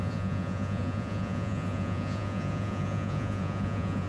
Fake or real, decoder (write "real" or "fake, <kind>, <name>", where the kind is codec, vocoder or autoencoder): fake, vocoder, Vocos